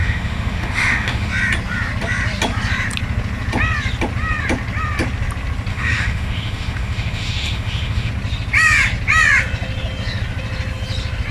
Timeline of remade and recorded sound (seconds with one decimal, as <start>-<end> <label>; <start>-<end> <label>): 0.0-1.3 remade; 1.3-5.7 recorded; 5.7-8.1 remade; 8.1-11.3 recorded